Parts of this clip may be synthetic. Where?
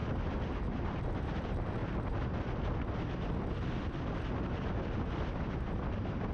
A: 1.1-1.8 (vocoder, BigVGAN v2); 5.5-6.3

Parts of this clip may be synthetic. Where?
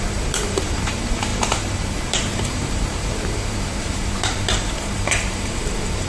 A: 0.0-6.1 (vocoder, BigVGAN v2)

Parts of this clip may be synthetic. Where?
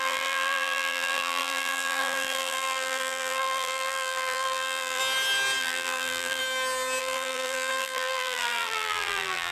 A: 0.0-5.0 (vocoder, BigVGAN v2); 5.6-6.4; 7.0-9.5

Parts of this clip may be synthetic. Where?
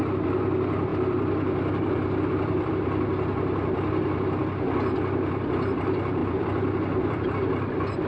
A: 0.9-2.7 (vocoder, BigVGAN v2); 6.2-7.3